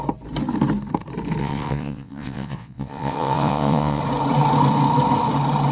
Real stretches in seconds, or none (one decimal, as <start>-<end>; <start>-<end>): 0.0-1.4; 4.0-5.7